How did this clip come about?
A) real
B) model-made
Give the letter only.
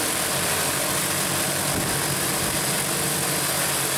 A